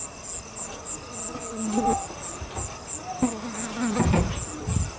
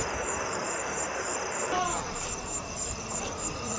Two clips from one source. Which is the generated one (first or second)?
second